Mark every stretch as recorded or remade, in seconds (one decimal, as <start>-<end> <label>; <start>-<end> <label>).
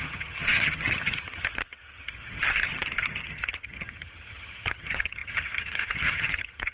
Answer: 0.0-6.7 remade